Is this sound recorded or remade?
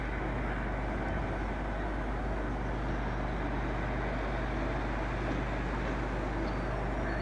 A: recorded